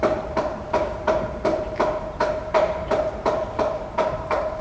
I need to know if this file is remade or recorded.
remade